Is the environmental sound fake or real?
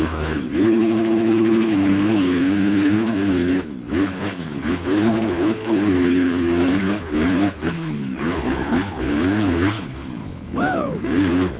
fake